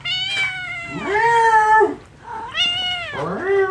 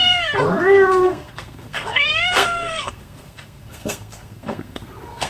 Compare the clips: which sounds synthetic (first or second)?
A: second